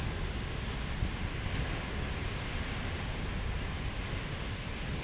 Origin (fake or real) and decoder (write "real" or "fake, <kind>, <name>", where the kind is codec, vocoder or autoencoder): real